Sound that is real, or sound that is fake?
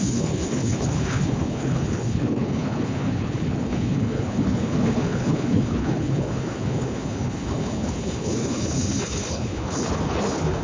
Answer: fake